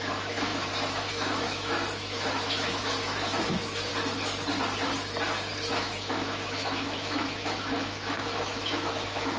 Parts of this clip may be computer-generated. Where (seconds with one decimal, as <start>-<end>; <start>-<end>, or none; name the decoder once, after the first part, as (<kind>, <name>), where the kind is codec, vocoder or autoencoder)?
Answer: 0.0-3.9 (autoencoder, DAC-VAE); 5.7-9.4